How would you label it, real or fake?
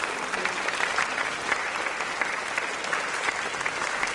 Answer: real